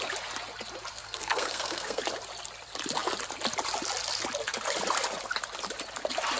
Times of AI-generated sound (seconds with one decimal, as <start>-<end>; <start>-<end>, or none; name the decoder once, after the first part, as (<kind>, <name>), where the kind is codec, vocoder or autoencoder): 0.9-2.0 (codec, SNAC)